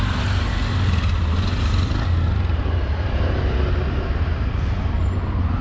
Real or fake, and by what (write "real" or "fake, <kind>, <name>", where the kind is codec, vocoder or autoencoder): real